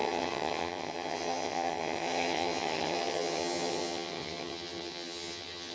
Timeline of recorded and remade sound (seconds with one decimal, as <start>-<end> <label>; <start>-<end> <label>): 0.0-5.7 remade